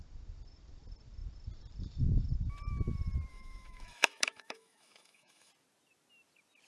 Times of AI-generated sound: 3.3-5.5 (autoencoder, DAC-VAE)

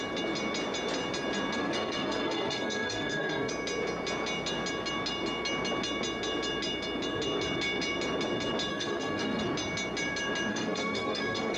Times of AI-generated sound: 1.6-3.5 (codec, SNAC); 8.7-9.4; 10.5-11.6

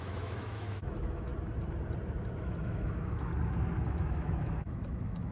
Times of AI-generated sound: 0.0-1.3 (autoencoder, DAC-VAE); 2.4-3.3; 3.9-5.3

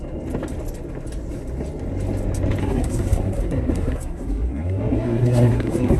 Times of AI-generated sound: 2.6-6.0 (codec, SNAC)

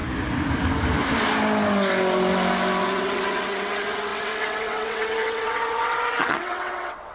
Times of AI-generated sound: 2.8-7.1 (vocoder, WaveNeXt)

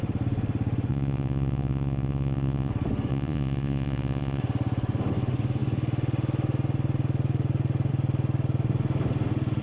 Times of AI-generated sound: 0.9-2.7 (vocoder, Vocos); 3.1-4.4